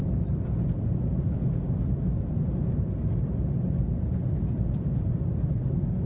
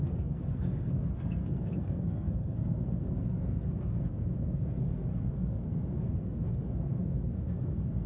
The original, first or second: first